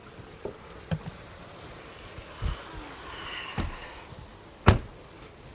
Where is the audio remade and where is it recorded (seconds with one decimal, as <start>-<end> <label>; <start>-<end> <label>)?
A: 0.0-5.5 recorded